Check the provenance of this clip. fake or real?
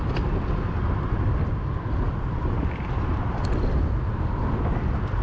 real